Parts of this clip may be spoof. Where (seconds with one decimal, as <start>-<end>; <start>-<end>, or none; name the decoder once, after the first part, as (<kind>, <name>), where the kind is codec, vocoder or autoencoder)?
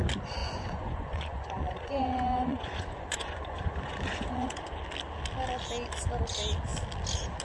0.4-4.8 (vocoder, Vocos)